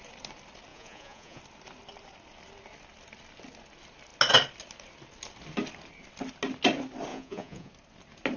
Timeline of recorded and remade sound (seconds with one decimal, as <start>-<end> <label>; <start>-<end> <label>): 0.0-0.7 recorded; 0.7-1.4 remade; 1.4-7.1 recorded; 7.1-7.7 remade; 7.7-8.4 recorded